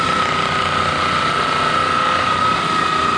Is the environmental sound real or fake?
real